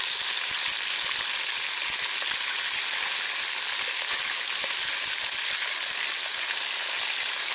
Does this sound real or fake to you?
real